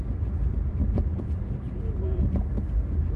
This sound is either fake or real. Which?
fake